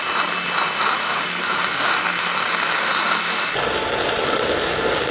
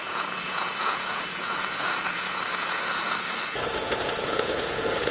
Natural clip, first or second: first